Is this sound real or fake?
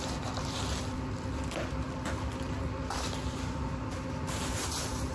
fake